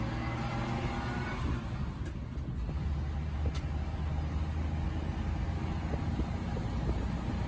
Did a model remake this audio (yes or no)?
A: no